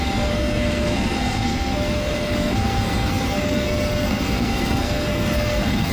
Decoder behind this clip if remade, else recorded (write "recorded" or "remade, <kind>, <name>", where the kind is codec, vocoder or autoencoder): remade, codec, SNAC